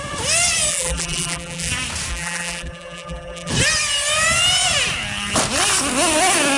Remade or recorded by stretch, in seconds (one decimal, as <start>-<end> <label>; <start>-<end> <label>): 0.0-0.7 recorded; 0.7-1.7 remade; 1.7-2.1 recorded; 2.1-3.5 remade; 3.5-6.6 recorded